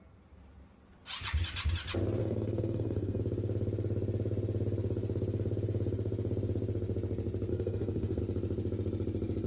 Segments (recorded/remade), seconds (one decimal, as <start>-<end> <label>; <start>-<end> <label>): 0.0-2.2 recorded; 2.2-3.2 remade; 3.2-7.5 recorded; 7.5-8.2 remade; 8.2-9.5 recorded